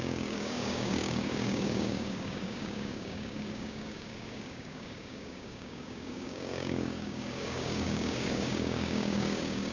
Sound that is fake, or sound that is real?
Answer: fake